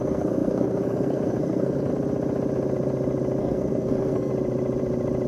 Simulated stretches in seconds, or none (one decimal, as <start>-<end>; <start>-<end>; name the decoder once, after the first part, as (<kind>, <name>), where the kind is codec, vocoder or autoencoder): 0.0-1.9 (codec, SNAC); 3.4-4.3